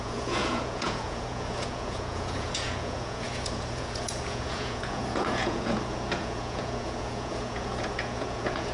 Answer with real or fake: fake